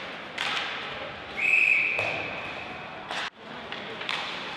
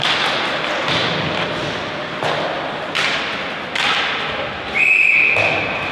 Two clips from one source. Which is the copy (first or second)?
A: first